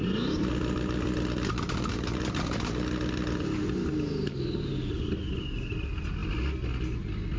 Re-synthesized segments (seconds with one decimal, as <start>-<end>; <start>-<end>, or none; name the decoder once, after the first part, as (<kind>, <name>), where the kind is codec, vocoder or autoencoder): none